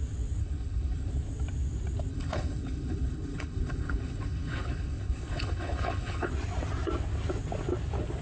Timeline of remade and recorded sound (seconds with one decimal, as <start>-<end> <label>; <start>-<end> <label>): 0.0-0.4 recorded; 0.4-1.1 remade; 1.1-2.1 recorded; 2.1-6.3 remade; 6.3-8.2 recorded